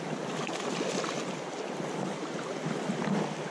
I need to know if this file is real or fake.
real